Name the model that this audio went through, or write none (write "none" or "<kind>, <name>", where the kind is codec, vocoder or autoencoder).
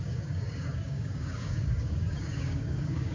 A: codec, DAC